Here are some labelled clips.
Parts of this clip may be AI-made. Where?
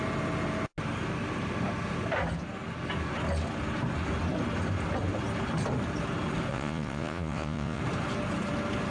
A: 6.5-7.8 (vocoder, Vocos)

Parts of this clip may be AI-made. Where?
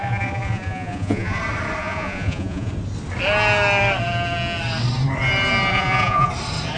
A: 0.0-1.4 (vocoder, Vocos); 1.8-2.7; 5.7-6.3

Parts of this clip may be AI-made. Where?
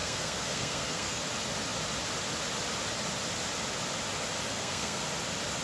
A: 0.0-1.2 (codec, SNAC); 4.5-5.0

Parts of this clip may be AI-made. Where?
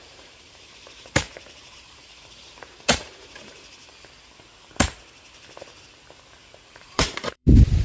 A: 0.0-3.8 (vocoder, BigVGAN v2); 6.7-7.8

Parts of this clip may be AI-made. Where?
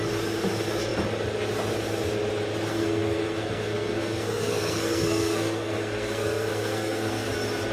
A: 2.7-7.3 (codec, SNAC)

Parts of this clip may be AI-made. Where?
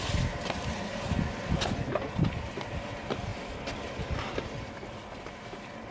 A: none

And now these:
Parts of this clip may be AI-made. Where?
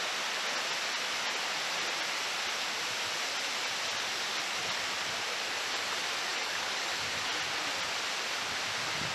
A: 6.3-6.9 (codec, DAC)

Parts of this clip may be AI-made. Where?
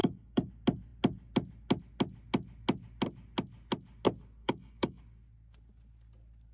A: 0.0-0.5 (codec, DAC); 4.4-5.0